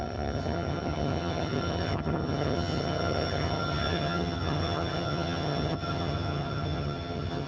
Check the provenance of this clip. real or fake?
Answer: fake